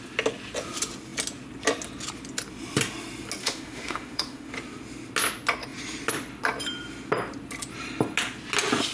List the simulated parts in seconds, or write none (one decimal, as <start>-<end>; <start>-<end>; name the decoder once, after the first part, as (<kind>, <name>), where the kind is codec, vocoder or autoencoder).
3.4-4.5 (autoencoder, DAC-VAE)

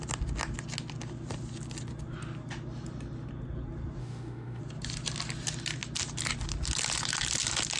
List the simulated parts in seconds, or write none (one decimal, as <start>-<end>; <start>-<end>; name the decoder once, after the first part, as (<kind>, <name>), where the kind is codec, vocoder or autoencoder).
4.0-4.6 (autoencoder, DAC-VAE)